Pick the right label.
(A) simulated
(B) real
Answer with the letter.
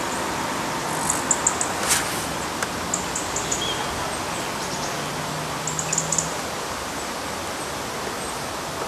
B